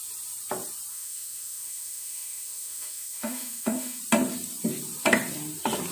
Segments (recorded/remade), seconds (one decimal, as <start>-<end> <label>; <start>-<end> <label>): 0.0-0.9 recorded; 0.9-4.0 remade; 4.0-5.9 recorded